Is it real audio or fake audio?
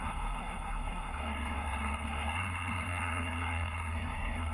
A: fake